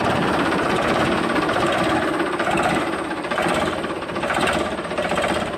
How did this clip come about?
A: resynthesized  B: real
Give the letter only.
A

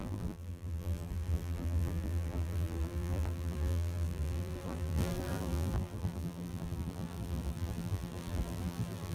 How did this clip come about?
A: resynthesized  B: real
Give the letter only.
A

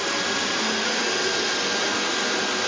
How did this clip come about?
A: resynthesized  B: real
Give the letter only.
B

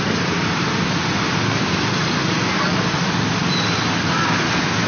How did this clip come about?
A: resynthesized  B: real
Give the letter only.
B